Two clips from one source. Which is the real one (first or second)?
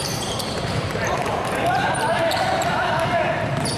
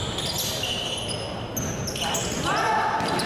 second